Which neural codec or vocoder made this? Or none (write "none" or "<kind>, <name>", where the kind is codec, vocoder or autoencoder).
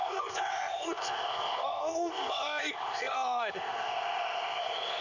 codec, ZipCodec